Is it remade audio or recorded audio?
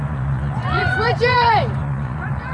remade